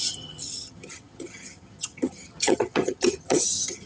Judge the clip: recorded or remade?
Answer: remade